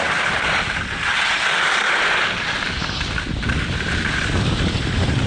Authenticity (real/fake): fake